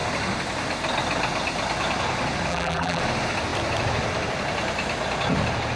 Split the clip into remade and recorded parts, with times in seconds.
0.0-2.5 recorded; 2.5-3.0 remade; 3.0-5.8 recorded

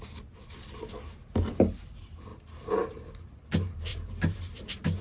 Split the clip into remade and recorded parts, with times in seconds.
0.0-3.9 recorded; 3.9-4.6 remade; 4.6-5.0 recorded

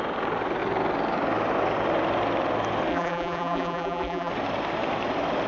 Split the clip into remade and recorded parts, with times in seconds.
0.0-2.9 recorded; 2.9-4.3 remade; 4.3-5.5 recorded

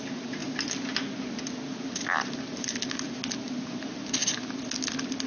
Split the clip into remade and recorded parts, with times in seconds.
0.0-0.4 remade; 0.4-3.6 recorded; 3.6-4.2 remade; 4.2-5.3 recorded

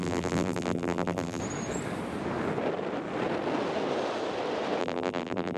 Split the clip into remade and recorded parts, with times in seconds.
0.0-1.4 remade; 1.4-4.8 recorded; 4.8-5.6 remade